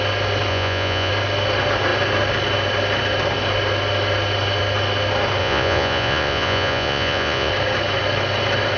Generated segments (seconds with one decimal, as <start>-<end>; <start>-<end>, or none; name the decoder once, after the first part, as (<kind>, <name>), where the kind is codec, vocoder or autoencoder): 0.5-1.1 (vocoder, Vocos); 5.4-7.5